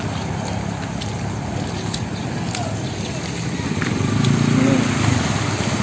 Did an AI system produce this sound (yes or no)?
no